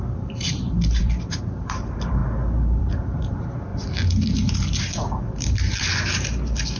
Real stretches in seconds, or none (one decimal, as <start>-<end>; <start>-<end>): 2.2-2.8; 3.7-6.8